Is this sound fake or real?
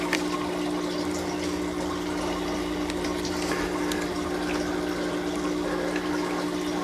real